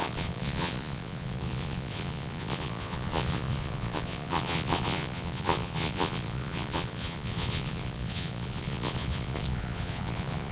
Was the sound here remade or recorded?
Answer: remade